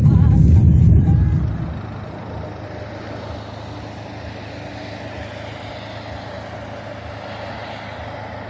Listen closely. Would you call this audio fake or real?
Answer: real